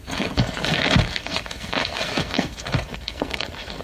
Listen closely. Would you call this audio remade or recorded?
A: remade